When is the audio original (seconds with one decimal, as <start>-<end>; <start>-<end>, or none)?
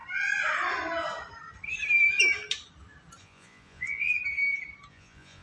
0.0-3.2; 4.1-4.9